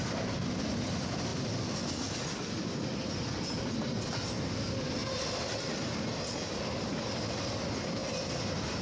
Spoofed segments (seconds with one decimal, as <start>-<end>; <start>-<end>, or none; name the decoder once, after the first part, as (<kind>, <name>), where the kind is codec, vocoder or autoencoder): none